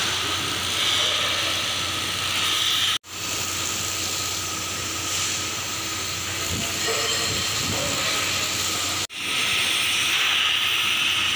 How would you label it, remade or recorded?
recorded